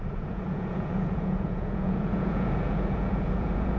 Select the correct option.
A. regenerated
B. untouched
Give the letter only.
A